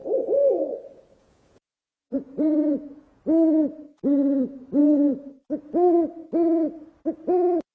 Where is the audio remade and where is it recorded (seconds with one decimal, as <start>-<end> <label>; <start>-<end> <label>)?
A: 0.0-3.2 remade; 3.2-4.8 recorded; 4.8-5.3 remade; 5.3-7.7 recorded